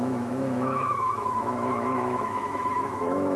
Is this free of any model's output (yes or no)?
no